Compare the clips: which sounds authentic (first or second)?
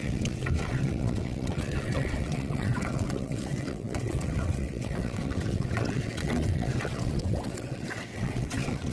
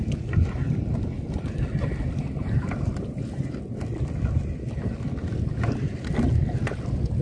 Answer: second